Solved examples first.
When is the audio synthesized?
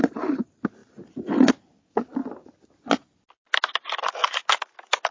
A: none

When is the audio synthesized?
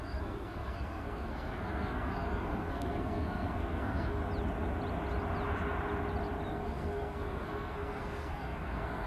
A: 0.0-4.2 (codec, SNAC); 6.5-9.1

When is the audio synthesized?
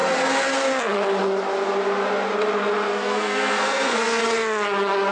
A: 3.1-4.2 (codec, SNAC)